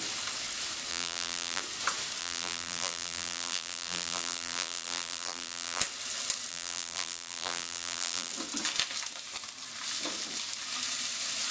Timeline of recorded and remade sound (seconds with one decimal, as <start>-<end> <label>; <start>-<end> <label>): 0.0-0.9 recorded; 0.9-1.6 remade; 1.6-2.2 recorded; 2.2-5.8 remade; 5.8-6.5 recorded; 6.5-8.3 remade; 8.3-11.5 recorded